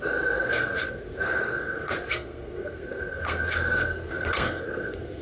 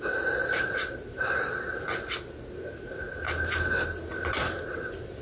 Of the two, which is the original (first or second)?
second